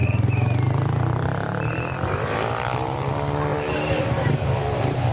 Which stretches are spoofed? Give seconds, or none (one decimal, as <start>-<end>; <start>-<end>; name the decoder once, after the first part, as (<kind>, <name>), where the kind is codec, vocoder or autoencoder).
0.0-3.1 (vocoder, BigVGAN v2); 3.5-5.1